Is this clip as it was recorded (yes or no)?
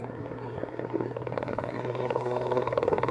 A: no